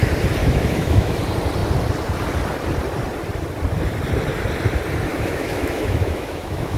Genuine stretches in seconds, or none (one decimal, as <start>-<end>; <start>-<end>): 0.0-0.4; 1.2-5.1